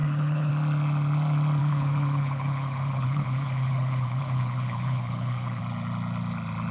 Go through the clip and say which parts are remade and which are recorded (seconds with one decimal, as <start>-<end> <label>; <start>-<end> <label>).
0.0-0.5 remade; 0.5-1.6 recorded; 1.6-5.6 remade; 5.6-6.7 recorded